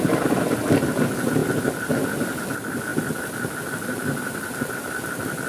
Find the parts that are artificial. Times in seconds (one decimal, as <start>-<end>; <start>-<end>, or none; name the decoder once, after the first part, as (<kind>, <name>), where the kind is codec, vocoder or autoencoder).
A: none